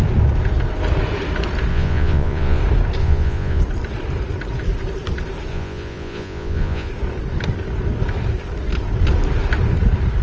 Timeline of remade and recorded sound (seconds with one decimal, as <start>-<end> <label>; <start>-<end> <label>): 0.0-1.7 recorded; 1.7-2.6 remade; 2.6-3.0 recorded; 3.0-3.6 remade; 3.6-5.5 recorded; 5.5-6.9 remade; 6.9-10.2 recorded

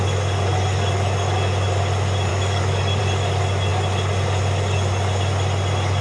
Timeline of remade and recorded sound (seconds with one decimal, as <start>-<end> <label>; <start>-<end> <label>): 0.0-2.3 recorded; 2.3-3.0 remade; 3.0-6.0 recorded